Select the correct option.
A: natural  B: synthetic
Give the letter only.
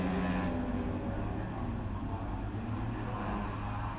A